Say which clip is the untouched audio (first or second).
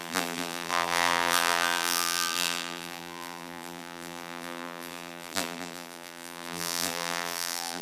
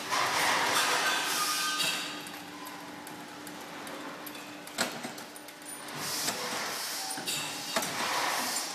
second